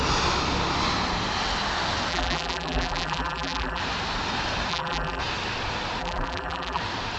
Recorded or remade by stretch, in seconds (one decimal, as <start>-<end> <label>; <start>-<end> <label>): 0.0-2.1 recorded; 2.1-3.8 remade; 3.8-4.7 recorded; 4.7-5.2 remade; 5.2-6.0 recorded; 6.0-6.8 remade; 6.8-7.2 recorded